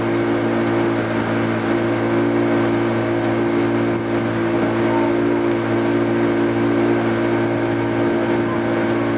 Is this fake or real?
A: real